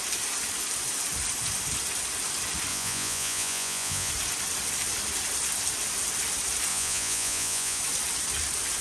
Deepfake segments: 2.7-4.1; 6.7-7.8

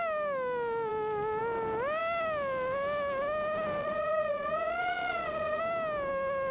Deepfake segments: 3.8-5.6

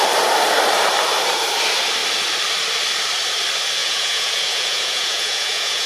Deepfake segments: 3.8-5.9